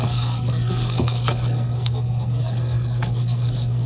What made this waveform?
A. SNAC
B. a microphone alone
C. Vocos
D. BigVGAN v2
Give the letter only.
A